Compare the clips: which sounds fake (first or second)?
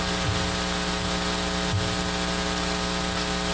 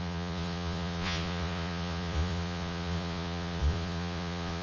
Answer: second